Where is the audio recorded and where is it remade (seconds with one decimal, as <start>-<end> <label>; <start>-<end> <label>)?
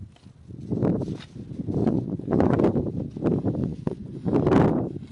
0.0-1.8 recorded; 1.8-2.6 remade; 2.6-3.6 recorded; 3.6-4.3 remade; 4.3-5.1 recorded